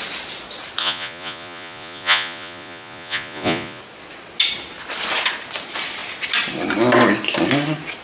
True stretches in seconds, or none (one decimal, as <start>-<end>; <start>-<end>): 0.0-0.8; 3.8-8.0